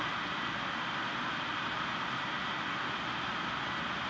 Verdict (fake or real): real